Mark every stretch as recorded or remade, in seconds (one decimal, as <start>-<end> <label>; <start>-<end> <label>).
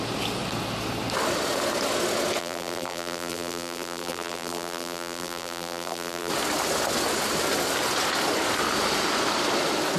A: 0.0-2.4 recorded; 2.4-6.3 remade; 6.3-10.0 recorded